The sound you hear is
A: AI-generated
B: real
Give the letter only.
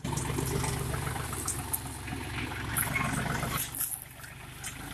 B